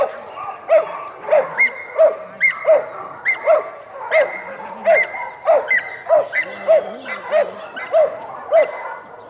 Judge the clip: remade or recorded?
recorded